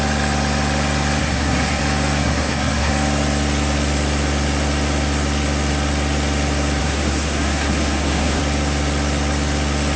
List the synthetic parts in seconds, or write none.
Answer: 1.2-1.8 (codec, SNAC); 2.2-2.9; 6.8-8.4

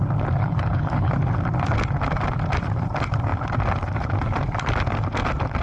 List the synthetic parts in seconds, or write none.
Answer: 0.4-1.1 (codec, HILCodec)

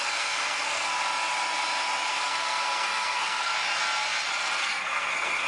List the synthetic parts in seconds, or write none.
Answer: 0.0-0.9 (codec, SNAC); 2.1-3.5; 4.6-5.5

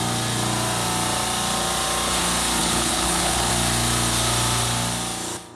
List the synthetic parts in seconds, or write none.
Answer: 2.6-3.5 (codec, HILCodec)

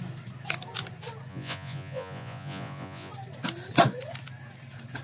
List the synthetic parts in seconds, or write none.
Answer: 1.3-3.1 (vocoder, Vocos)

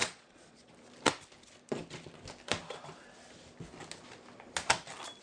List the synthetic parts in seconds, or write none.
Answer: 0.0-0.7 (vocoder, Vocos)